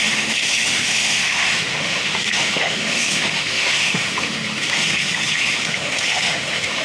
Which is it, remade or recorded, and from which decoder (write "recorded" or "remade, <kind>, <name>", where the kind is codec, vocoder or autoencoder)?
remade, autoencoder, DAC-VAE